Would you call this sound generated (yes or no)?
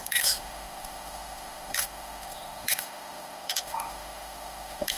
yes